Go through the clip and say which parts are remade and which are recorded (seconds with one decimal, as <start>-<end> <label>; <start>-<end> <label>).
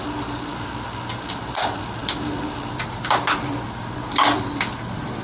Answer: 0.0-0.5 remade; 0.5-1.1 recorded; 1.1-5.2 remade